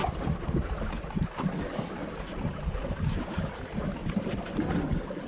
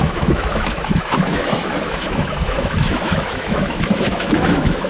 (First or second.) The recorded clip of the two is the first